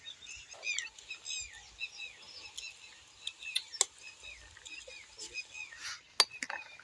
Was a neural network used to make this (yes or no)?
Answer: no